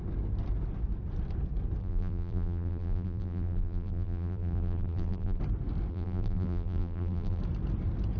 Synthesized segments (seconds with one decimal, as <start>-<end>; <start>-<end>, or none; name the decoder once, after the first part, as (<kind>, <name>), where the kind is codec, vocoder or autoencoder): 1.8-5.4 (vocoder, BigVGAN v2); 5.9-7.4